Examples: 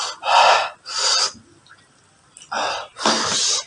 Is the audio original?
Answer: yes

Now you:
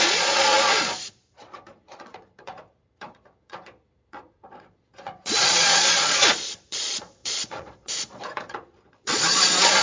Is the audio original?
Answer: no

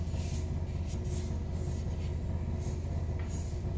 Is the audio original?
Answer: yes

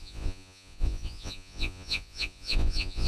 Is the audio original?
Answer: no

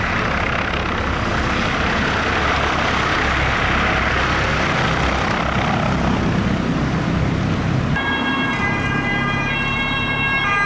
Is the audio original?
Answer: yes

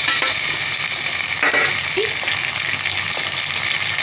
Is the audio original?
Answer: yes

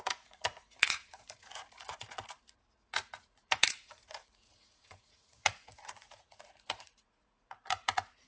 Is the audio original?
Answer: no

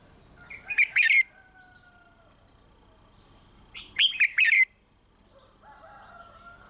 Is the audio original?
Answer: yes